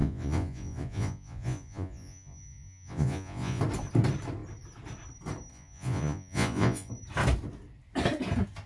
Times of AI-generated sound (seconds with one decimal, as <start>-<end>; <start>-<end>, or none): 0.0-3.6; 5.5-6.9